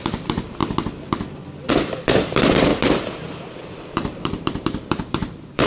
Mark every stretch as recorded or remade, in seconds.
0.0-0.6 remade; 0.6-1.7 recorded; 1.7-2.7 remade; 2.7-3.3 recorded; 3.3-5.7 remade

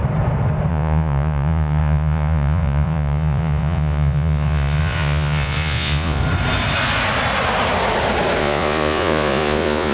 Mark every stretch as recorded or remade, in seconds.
0.0-0.7 recorded; 0.7-6.2 remade; 6.2-8.4 recorded; 8.4-9.9 remade

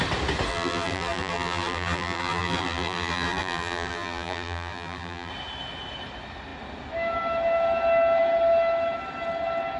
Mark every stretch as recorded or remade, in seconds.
0.0-0.5 recorded; 0.5-5.3 remade; 5.3-9.8 recorded